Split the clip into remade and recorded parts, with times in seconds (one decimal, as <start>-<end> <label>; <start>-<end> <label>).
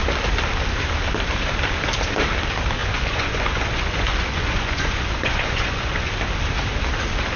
0.0-2.8 recorded; 2.8-6.1 remade; 6.1-7.4 recorded